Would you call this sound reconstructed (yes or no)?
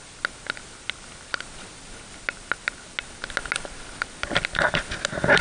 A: no